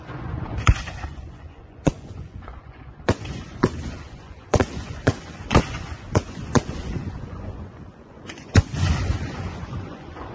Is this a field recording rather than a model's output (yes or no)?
no